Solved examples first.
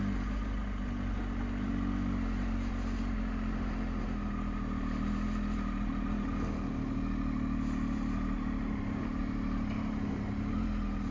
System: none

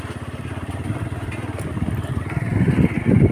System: none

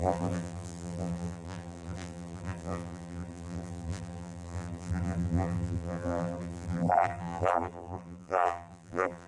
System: vocoder, BigVGAN v2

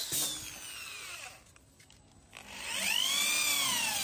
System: none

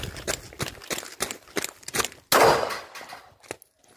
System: none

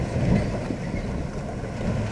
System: none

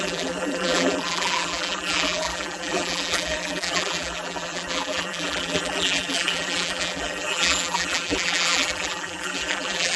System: vocoder, BigVGAN v2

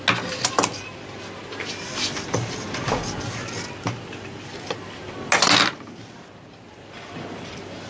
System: none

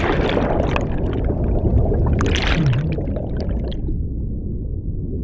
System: none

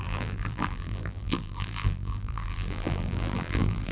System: vocoder, BigVGAN v2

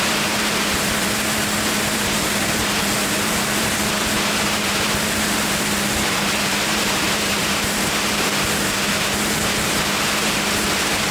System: vocoder, BigVGAN v2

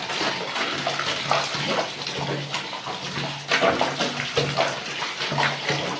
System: none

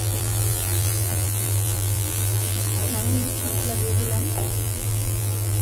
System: vocoder, BigVGAN v2